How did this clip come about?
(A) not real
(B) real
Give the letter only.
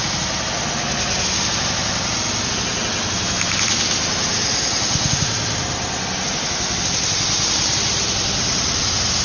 B